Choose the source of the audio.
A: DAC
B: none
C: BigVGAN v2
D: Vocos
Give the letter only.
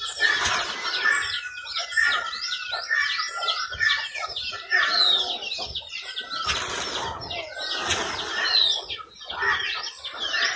B